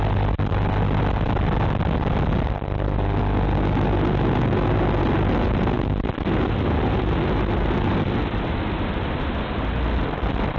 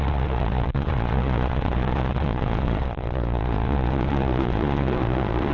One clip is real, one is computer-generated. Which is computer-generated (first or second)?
second